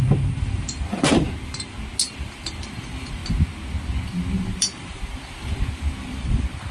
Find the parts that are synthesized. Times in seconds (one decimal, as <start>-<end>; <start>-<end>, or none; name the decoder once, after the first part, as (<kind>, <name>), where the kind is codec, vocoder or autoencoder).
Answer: 0.0-1.1 (vocoder, BigVGAN v2); 2.2-3.2; 4.3-6.7